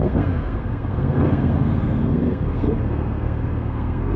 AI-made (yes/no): yes